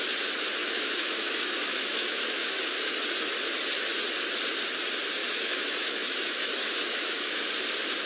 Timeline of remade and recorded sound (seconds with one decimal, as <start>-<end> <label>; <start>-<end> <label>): 0.0-0.6 recorded; 0.6-3.0 remade; 3.0-5.2 recorded; 5.2-7.4 remade; 7.4-8.1 recorded